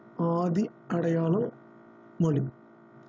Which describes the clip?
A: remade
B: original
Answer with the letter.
B